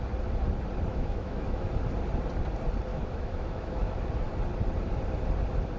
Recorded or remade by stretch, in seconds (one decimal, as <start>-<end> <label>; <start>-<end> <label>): 0.0-0.9 recorded; 0.9-1.7 remade; 1.7-2.9 recorded; 2.9-4.0 remade; 4.0-5.8 recorded